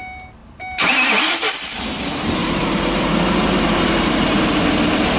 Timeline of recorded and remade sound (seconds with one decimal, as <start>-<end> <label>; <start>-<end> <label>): 0.0-0.4 recorded; 0.4-1.3 remade; 1.3-2.4 recorded; 2.4-4.4 remade; 4.4-5.2 recorded